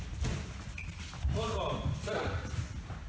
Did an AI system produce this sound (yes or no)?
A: no